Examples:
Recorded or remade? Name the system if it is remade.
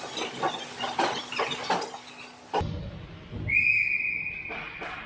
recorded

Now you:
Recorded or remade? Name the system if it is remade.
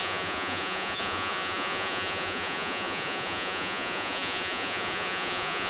remade, vocoder, Vocos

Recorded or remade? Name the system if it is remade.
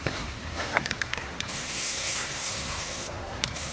remade, codec, SNAC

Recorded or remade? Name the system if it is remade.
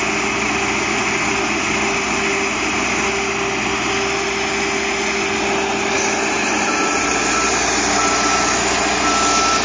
recorded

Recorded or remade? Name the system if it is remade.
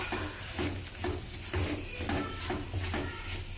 recorded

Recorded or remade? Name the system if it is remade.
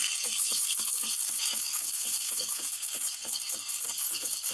remade, codec, SNAC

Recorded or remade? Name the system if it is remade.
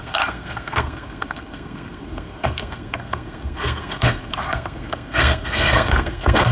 remade, codec, SNAC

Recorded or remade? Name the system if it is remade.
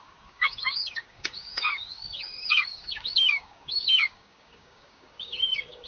remade, codec, DAC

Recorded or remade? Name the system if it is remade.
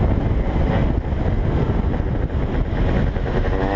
recorded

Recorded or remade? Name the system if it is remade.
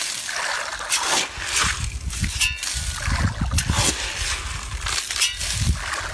recorded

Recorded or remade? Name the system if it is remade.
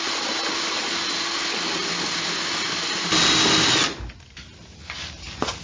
recorded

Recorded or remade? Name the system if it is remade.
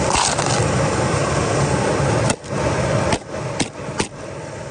recorded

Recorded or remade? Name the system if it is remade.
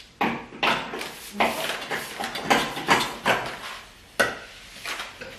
recorded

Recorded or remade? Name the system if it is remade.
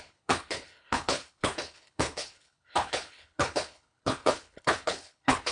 remade, codec, HILCodec